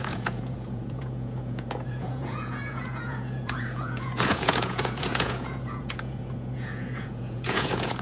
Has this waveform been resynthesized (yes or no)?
yes